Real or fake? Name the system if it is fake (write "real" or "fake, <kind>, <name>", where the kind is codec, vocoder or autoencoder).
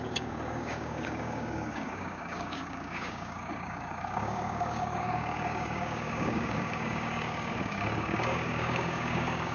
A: fake, codec, DAC